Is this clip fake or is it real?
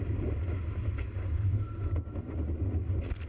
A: real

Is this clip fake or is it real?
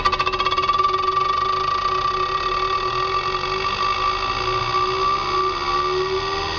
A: real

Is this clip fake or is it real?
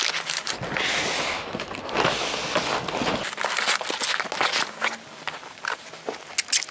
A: real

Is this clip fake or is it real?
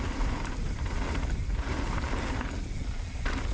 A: real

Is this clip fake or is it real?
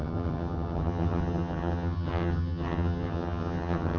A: fake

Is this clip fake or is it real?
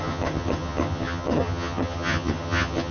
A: fake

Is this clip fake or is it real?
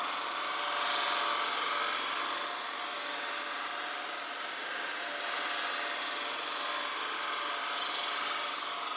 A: real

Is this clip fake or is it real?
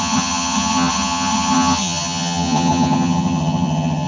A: fake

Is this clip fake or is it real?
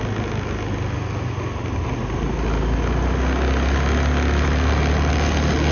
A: real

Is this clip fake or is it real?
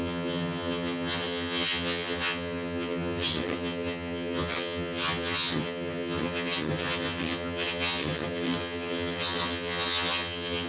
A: fake